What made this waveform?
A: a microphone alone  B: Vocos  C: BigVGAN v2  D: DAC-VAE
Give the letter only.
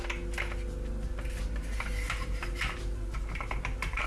A